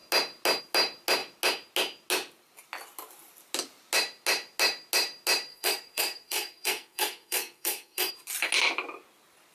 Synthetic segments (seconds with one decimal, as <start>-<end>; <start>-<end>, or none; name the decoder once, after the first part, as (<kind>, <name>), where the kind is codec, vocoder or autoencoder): 5.5-8.1 (codec, SNAC)